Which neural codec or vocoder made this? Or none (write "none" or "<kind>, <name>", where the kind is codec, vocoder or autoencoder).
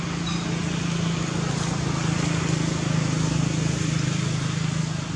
none